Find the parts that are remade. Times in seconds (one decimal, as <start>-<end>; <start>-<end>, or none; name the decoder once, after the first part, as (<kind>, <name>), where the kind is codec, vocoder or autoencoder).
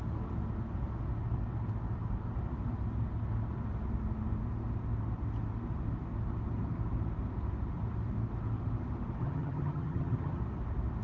9.2-10.4 (vocoder, HiFi-GAN)